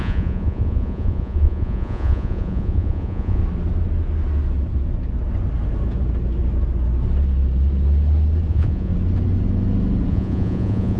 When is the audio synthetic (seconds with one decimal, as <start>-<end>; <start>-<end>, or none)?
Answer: 0.0-3.4; 8.5-8.9; 10.1-11.0